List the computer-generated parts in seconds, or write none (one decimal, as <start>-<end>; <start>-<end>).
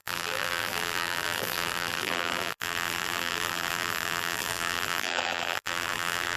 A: 0.0-6.4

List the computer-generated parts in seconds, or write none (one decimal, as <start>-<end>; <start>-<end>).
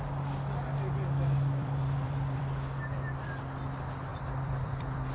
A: 1.6-2.4; 4.1-5.1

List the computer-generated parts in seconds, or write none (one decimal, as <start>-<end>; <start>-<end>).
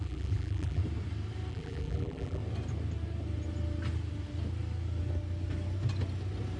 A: 0.0-0.8; 1.5-2.4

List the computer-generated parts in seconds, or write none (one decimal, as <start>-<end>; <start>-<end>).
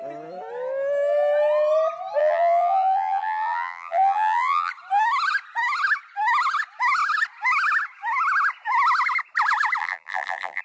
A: 2.2-4.7; 9.8-10.6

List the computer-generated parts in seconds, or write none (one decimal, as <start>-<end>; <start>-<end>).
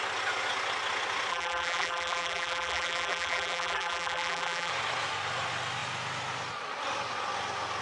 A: 1.3-4.7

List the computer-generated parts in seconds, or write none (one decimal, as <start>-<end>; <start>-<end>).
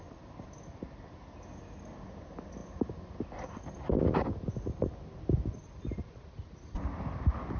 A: 4.8-5.5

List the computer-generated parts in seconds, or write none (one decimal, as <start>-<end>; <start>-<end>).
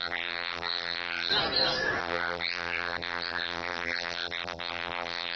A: 0.0-1.3; 2.0-5.4